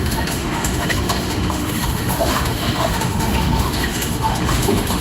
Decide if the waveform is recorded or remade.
remade